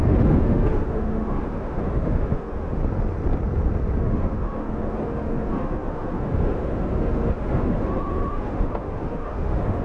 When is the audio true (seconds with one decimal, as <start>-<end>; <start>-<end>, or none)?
2.8-4.0